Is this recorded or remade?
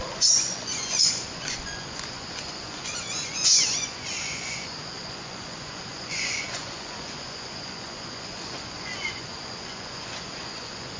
remade